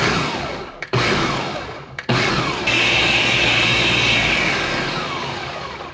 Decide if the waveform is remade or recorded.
remade